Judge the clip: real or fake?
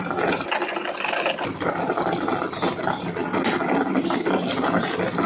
real